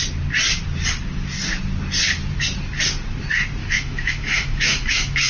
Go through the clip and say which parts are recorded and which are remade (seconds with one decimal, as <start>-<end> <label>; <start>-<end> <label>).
0.0-3.6 recorded; 3.6-5.3 remade